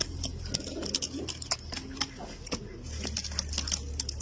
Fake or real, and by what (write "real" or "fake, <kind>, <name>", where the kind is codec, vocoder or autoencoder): real